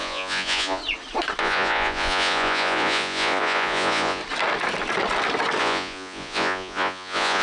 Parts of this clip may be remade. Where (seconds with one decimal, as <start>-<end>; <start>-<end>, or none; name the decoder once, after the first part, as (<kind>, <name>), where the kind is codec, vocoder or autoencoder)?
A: 0.0-0.8 (vocoder, Vocos); 1.4-4.2; 5.6-7.4

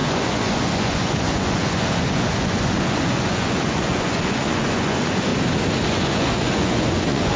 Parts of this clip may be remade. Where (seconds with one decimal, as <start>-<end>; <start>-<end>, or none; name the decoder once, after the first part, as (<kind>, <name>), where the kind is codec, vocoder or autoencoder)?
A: 0.0-5.3 (vocoder, Vocos); 5.9-7.4

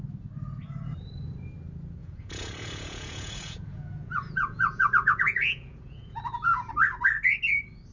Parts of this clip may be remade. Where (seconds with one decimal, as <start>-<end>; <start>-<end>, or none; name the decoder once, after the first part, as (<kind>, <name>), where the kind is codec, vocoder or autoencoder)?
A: 2.0-6.7 (vocoder, Vocos)